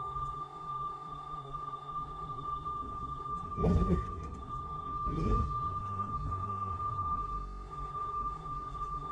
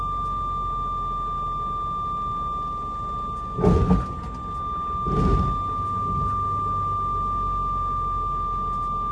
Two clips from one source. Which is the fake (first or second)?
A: first